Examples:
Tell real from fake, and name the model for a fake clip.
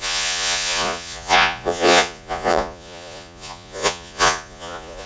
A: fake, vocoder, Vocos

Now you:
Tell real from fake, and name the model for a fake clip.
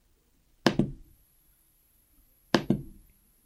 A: real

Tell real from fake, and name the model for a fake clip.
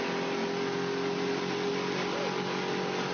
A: real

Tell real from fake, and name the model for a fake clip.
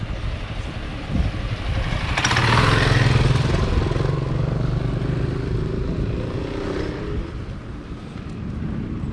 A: real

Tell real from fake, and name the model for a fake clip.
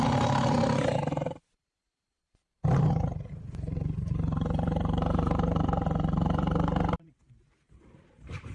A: fake, vocoder, BigVGAN v2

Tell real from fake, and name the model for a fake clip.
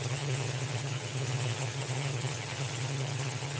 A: fake, vocoder, HiFi-GAN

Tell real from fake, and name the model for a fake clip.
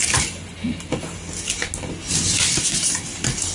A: real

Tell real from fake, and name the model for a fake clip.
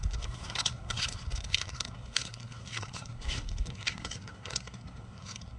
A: fake, codec, SNAC